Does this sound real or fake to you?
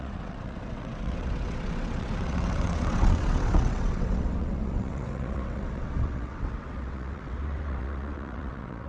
fake